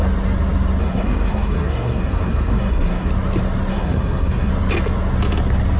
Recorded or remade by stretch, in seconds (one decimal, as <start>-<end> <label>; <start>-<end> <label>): 0.0-0.8 recorded; 0.8-3.1 remade; 3.1-3.7 recorded; 3.7-4.5 remade; 4.5-5.8 recorded